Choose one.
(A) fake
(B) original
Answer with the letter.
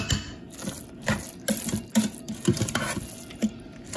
B